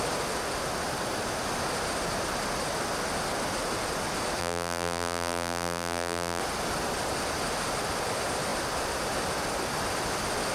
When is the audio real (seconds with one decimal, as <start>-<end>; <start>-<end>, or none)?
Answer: 0.0-4.4; 6.4-10.5